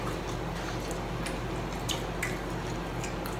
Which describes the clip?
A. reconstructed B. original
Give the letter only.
B